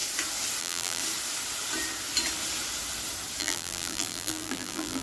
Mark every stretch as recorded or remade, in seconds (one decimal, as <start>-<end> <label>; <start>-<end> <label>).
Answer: 0.0-0.6 recorded; 0.6-1.0 remade; 1.0-3.4 recorded; 3.4-5.0 remade